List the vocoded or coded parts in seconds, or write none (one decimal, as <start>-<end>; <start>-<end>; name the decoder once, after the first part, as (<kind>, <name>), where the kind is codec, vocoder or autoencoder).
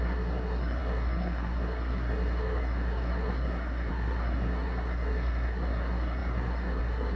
0.0-7.2 (codec, SNAC)